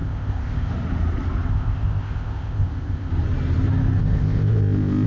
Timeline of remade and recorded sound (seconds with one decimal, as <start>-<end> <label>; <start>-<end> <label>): 0.0-0.7 remade; 0.7-1.5 recorded; 1.5-3.1 remade; 3.1-4.0 recorded; 4.0-5.1 remade